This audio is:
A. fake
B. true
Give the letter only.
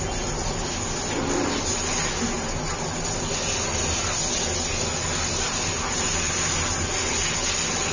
B